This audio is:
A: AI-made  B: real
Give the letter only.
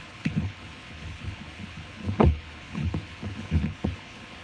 A